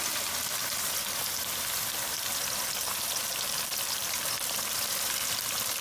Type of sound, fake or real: fake